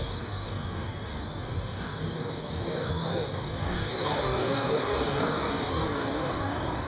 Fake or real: fake